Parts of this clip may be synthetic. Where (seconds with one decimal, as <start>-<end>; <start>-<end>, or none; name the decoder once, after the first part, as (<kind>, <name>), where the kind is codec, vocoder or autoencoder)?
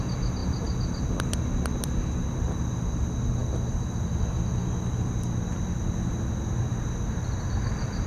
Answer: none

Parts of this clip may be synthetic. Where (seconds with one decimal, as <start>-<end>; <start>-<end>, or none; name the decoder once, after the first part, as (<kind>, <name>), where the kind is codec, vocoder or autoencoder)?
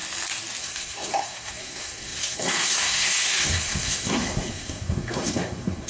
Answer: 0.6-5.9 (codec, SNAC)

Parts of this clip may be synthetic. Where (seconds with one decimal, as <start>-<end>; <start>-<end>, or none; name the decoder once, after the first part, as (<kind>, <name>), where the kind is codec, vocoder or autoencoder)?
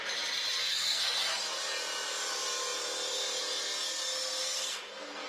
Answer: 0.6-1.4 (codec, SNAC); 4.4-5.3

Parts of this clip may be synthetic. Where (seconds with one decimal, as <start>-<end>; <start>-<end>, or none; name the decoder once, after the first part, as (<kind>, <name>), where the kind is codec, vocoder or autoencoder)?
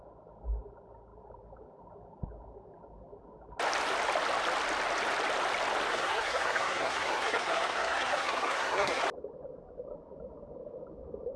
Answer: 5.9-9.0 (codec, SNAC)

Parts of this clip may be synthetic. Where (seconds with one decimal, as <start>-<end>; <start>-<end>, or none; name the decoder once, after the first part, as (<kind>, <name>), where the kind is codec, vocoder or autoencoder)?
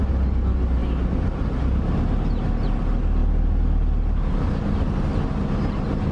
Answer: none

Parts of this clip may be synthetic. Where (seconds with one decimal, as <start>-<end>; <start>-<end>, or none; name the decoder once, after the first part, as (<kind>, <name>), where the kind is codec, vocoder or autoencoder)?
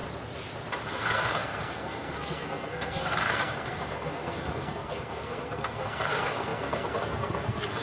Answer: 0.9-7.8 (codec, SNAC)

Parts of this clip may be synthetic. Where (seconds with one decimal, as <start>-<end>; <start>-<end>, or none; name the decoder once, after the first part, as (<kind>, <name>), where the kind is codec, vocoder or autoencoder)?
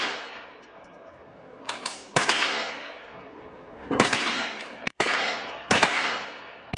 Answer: 0.0-6.8 (codec, SNAC)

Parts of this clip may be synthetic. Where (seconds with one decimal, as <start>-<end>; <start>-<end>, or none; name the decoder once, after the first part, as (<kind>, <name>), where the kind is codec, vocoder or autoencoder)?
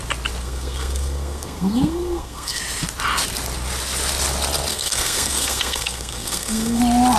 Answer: 0.4-2.6 (codec, SNAC); 4.7-6.8